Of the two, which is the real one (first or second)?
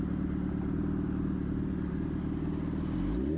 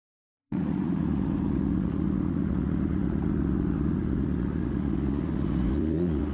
first